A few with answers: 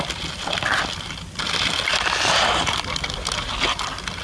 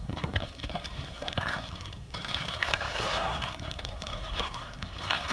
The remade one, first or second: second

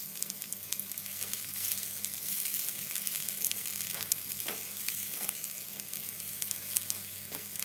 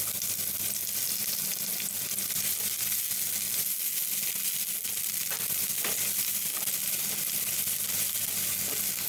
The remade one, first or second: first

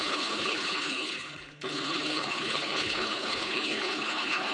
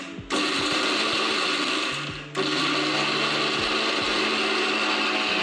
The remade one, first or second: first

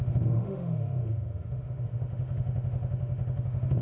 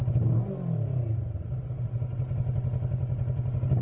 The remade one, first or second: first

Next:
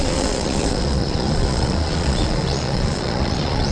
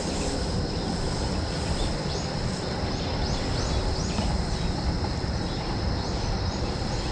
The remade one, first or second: first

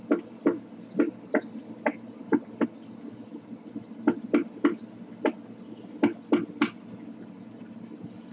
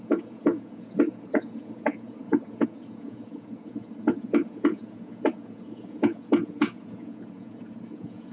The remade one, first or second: second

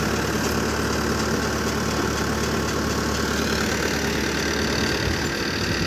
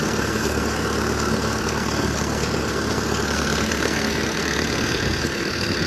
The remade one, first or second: second